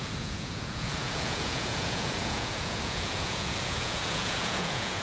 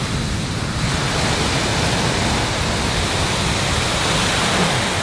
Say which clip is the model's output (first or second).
first